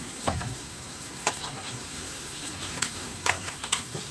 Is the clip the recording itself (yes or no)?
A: no